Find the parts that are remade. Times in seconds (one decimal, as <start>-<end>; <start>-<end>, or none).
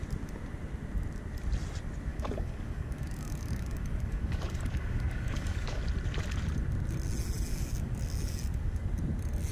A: 2.1-5.8; 7.5-8.9